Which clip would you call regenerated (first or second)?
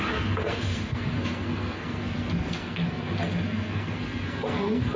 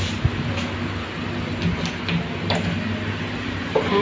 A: first